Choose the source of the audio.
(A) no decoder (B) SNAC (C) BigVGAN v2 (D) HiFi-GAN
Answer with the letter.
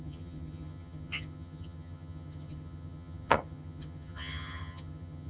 D